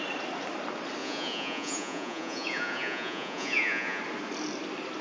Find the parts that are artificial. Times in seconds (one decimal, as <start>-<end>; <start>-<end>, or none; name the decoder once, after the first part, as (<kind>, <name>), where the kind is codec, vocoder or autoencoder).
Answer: 1.0-4.0 (vocoder, Vocos)